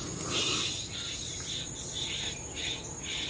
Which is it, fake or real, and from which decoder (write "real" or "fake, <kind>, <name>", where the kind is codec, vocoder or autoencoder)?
real